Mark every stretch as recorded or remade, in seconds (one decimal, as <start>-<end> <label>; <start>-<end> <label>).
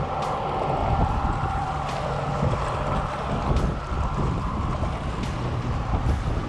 0.0-0.8 remade; 0.8-1.3 recorded; 1.3-2.3 remade; 2.3-6.5 recorded